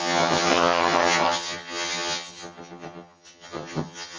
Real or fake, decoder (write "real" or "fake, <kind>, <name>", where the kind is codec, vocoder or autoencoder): fake, vocoder, HiFi-GAN